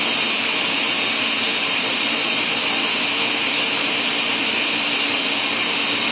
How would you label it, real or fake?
real